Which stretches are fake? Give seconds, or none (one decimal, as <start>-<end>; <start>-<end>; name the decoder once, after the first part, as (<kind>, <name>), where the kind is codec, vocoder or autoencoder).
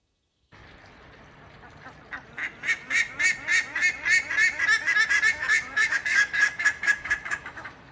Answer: 0.0-0.6 (autoencoder, DAC-VAE); 5.3-7.9